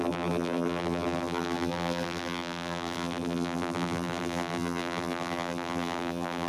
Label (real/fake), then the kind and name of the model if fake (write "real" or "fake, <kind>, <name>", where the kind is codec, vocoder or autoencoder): fake, vocoder, BigVGAN v2